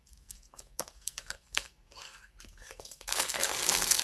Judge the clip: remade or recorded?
remade